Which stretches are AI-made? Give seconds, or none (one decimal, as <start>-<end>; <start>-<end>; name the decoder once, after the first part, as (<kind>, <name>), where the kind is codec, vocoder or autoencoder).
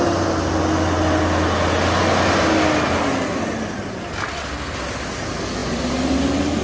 none